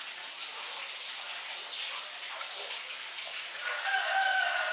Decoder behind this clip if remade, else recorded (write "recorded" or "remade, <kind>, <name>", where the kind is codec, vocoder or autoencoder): recorded